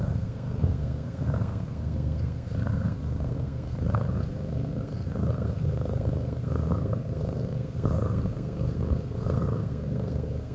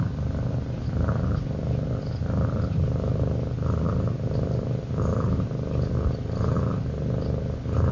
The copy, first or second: first